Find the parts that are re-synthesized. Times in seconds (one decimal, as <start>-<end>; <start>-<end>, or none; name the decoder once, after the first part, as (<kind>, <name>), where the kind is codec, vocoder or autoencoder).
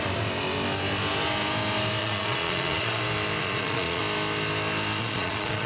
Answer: 2.0-3.0 (vocoder, Vocos); 3.4-4.0; 5.0-5.7